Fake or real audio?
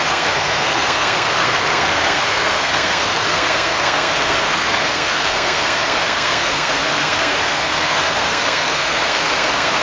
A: fake